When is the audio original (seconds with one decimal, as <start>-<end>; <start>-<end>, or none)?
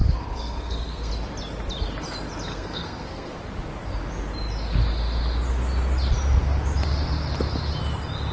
1.1-2.5; 3.4-8.3